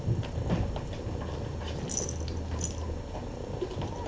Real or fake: real